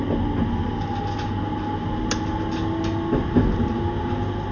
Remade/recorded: recorded